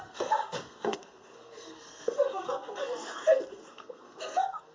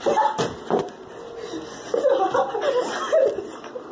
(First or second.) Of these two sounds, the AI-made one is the first